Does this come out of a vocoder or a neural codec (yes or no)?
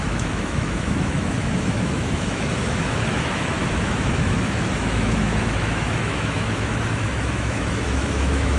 yes